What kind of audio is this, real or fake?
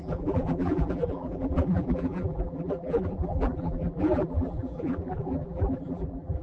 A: fake